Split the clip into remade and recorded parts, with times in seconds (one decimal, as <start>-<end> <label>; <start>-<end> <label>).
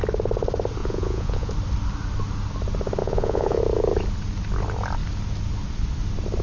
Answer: 0.0-0.8 recorded; 0.8-1.5 remade; 1.5-3.0 recorded; 3.0-3.6 remade; 3.6-6.4 recorded